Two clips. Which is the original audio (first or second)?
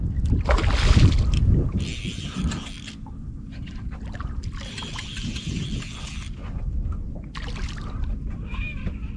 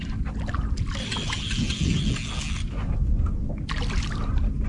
second